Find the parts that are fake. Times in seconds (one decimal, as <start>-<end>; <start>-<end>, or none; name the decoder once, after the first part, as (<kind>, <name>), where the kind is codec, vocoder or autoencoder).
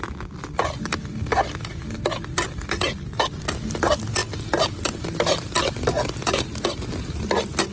none